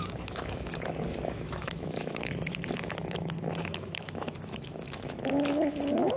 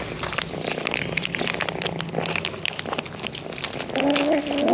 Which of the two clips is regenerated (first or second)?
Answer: first